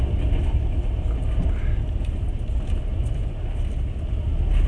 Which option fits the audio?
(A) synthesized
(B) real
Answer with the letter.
B